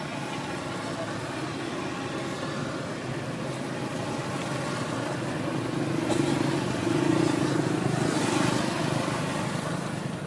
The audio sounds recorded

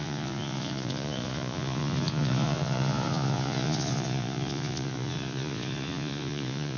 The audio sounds remade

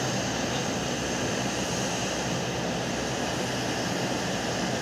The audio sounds recorded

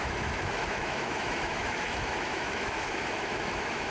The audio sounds remade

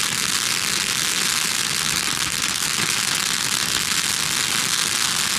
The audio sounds recorded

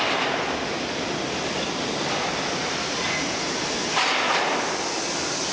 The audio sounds recorded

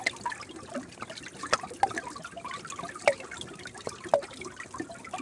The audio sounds recorded